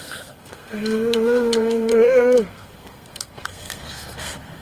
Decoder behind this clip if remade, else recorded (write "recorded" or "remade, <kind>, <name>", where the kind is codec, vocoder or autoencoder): remade, codec, SNAC